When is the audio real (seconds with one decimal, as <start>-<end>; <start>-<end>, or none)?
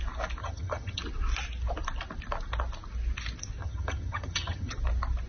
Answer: 0.0-0.4; 1.0-3.6; 4.7-5.3